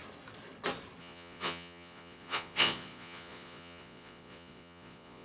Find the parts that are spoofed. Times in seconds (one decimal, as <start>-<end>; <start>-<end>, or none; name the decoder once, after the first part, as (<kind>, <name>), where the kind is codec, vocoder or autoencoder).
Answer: 1.0-5.2 (vocoder, Vocos)